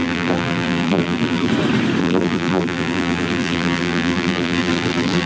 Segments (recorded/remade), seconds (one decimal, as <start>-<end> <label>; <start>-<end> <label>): 0.0-1.5 remade; 1.5-2.0 recorded; 2.0-5.3 remade